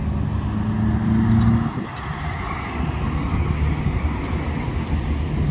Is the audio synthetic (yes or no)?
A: no